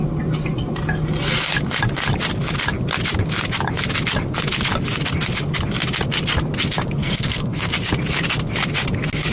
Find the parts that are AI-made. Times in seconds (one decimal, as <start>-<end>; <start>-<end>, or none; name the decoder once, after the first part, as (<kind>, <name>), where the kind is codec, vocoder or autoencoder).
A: 7.0-7.7 (codec, SNAC)